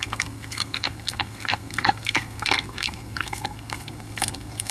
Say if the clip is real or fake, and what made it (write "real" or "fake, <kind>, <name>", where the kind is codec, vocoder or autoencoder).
fake, codec, SNAC